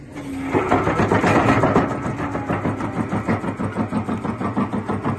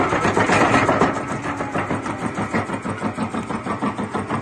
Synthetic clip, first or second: second